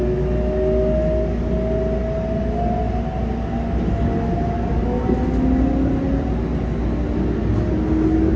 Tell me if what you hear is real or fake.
real